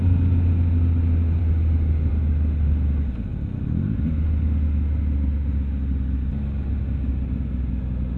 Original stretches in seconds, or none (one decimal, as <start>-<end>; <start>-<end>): 0.0-8.2